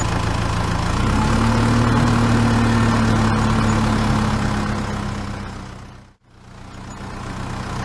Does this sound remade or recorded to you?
recorded